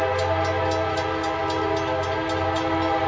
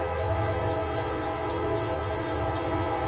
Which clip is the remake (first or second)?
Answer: second